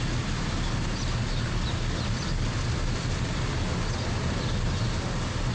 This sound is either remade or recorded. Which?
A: recorded